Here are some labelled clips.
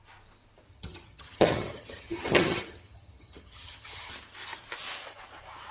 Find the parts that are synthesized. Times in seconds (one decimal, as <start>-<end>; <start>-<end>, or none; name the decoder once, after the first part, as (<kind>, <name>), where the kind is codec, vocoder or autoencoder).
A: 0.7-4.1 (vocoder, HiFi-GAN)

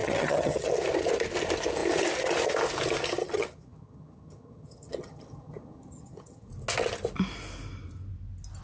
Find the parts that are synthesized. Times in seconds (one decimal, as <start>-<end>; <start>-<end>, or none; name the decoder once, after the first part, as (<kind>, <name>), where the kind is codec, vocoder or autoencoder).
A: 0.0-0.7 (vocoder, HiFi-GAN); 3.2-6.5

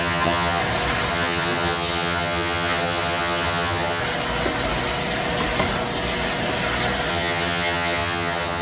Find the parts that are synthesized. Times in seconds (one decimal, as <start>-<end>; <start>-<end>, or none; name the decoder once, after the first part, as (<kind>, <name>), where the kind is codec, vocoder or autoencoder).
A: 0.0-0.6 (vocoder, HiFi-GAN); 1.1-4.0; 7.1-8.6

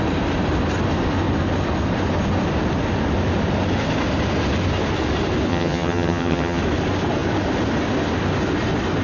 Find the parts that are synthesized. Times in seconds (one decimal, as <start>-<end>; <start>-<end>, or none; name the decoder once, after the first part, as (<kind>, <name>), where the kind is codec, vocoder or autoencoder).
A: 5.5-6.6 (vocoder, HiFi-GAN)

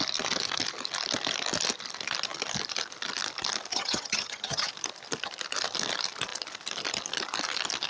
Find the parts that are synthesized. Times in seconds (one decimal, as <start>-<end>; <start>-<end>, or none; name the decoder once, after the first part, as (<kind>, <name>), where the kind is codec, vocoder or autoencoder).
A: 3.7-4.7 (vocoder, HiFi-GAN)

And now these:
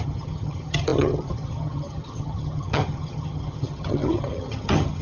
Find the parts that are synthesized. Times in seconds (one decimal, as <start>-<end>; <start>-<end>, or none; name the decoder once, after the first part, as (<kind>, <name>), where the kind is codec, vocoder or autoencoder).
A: 0.0-5.0 (vocoder, HiFi-GAN)

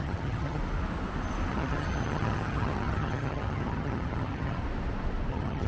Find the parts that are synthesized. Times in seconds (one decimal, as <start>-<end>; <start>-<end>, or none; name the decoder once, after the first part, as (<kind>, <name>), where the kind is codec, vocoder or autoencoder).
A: 0.0-0.6 (vocoder, HiFi-GAN); 1.5-4.6; 5.3-5.7